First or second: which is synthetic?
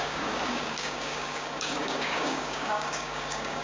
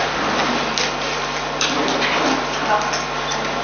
first